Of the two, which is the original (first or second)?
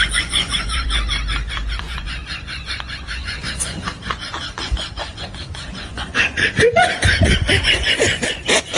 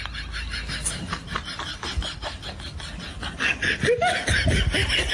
second